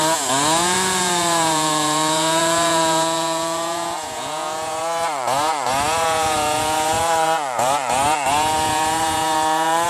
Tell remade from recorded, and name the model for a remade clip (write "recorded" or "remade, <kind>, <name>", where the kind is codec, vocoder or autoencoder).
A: remade, vocoder, Vocos